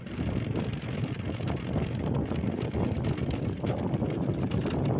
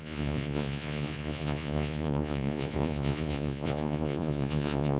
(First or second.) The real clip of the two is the first